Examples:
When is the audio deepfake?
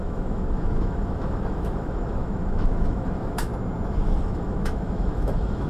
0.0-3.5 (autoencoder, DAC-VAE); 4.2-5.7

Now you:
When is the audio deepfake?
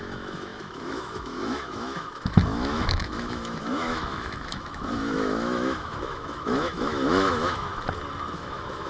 0.0-7.7 (autoencoder, DAC-VAE); 8.3-8.9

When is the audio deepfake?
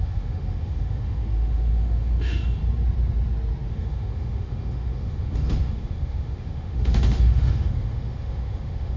0.0-2.6 (autoencoder, DAC-VAE); 3.7-9.0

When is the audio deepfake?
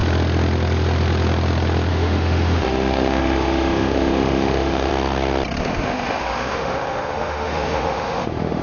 1.9-4.9 (autoencoder, DAC-VAE); 5.6-8.6